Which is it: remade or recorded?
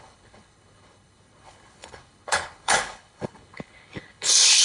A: remade